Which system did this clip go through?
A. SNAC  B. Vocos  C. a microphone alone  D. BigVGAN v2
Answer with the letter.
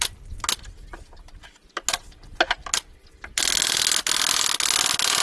C